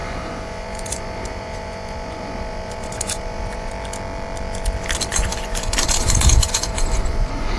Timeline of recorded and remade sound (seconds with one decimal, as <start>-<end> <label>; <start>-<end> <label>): 0.0-3.7 remade; 3.7-5.1 recorded; 5.1-7.6 remade